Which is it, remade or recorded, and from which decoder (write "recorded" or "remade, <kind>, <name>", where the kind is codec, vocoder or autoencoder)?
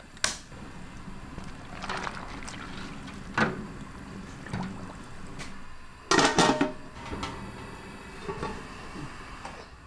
recorded